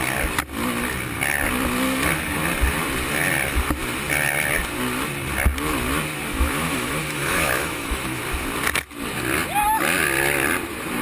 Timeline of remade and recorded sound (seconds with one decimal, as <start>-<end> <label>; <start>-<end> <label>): 0.0-6.3 recorded; 6.3-8.2 remade; 8.2-11.0 recorded

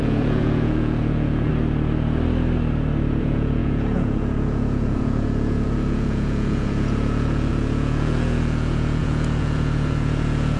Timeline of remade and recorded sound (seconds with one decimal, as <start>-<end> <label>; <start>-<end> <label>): 0.0-1.5 remade; 1.5-3.2 recorded; 3.2-10.6 remade

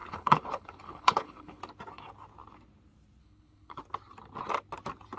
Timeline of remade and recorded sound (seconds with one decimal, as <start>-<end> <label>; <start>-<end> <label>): 0.0-1.6 remade; 1.6-3.2 recorded; 3.2-3.8 remade; 3.8-5.2 recorded

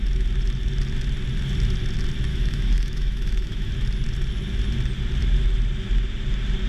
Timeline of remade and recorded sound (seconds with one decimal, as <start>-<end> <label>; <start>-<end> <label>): 0.0-2.3 recorded; 2.3-3.7 remade; 3.7-6.7 recorded

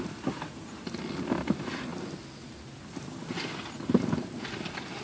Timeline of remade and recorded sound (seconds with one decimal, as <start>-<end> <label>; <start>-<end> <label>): 0.0-5.0 recorded